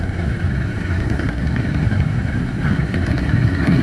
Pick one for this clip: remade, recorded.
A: remade